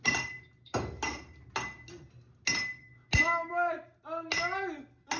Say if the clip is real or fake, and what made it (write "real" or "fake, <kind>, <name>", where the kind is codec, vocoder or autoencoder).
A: real